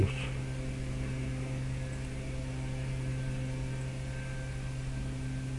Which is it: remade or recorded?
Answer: recorded